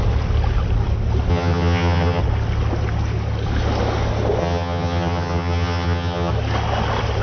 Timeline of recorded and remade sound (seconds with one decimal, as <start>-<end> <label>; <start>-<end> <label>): 0.0-1.3 recorded; 1.3-2.2 remade; 2.2-4.4 recorded; 4.4-6.3 remade; 6.3-7.2 recorded

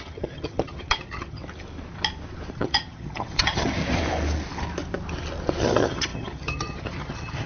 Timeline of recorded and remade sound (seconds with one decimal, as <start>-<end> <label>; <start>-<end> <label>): 0.0-1.4 remade; 1.4-2.5 recorded; 2.5-3.8 remade; 3.8-5.6 recorded; 5.6-7.5 remade

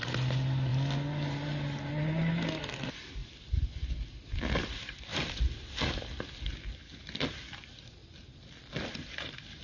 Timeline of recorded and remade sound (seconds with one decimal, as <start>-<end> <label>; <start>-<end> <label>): 0.0-9.6 recorded

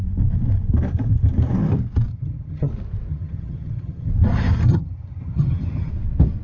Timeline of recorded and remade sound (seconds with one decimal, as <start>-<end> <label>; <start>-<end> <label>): 0.0-2.1 recorded; 2.1-2.7 remade; 2.7-3.1 recorded; 3.1-4.1 remade; 4.1-4.7 recorded; 4.7-5.9 remade; 5.9-6.4 recorded

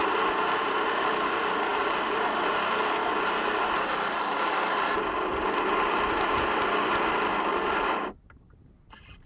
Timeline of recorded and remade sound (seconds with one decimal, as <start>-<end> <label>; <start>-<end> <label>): 0.0-9.3 recorded

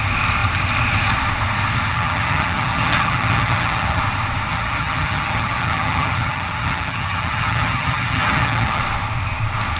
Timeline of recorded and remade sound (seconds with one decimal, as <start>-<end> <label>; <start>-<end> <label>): 0.0-1.9 recorded; 1.9-4.0 remade; 4.0-4.5 recorded; 4.5-8.8 remade; 8.8-9.8 recorded

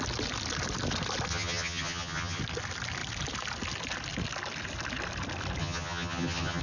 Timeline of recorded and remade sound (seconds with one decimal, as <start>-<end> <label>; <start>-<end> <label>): 0.0-1.3 recorded; 1.3-2.4 remade; 2.4-5.6 recorded; 5.6-6.6 remade

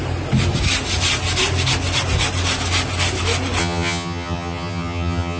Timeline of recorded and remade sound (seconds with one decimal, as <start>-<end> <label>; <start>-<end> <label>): 0.0-3.6 recorded; 3.6-5.4 remade